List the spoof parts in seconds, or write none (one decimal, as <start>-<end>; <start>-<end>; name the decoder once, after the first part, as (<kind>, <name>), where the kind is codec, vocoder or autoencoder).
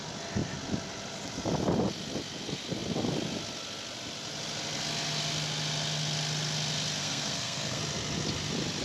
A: 7.0-7.8 (codec, SNAC)